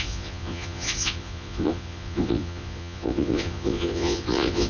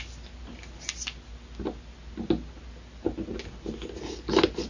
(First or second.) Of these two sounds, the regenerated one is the first